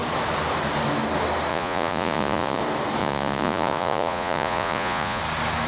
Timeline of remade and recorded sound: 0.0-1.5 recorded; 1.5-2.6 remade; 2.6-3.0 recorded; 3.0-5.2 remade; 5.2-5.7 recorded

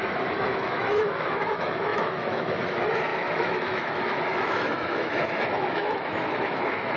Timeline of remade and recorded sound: 0.0-7.0 remade

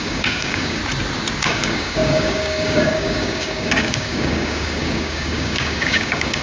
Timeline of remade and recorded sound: 0.0-0.8 remade; 0.8-1.4 recorded; 1.4-6.4 remade

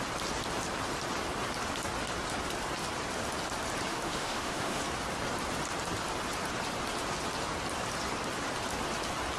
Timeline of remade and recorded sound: 0.0-3.9 recorded; 3.9-4.8 remade; 4.8-9.4 recorded